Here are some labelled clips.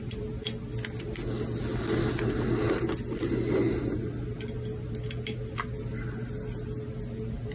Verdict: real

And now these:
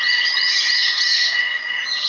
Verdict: fake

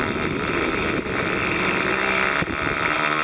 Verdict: real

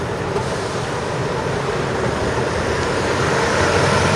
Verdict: real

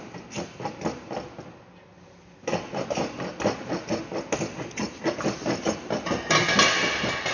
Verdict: real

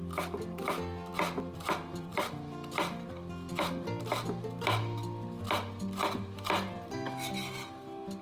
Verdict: real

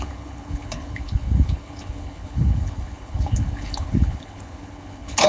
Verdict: fake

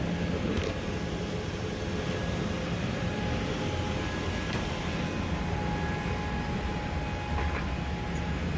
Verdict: real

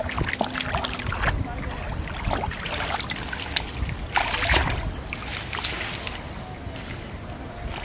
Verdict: real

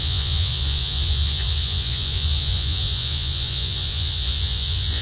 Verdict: fake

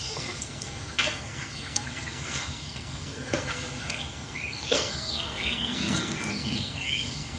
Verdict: fake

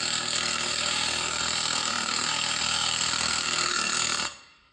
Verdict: fake